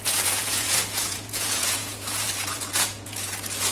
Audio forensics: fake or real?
fake